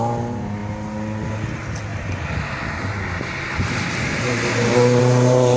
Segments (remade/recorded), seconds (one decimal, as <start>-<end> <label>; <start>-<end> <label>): 0.0-5.6 recorded